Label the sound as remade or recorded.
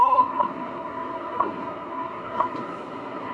remade